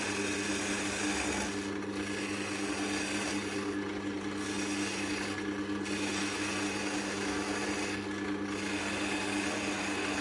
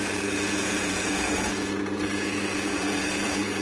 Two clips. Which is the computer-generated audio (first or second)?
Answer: second